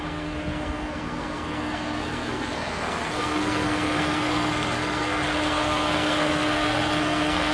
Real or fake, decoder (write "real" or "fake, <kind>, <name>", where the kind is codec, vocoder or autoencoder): fake, codec, SNAC